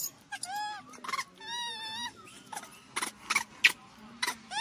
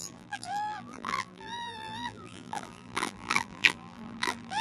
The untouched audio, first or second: first